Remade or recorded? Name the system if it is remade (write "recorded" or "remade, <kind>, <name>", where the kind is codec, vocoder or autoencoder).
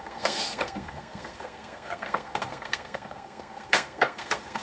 remade, codec, SNAC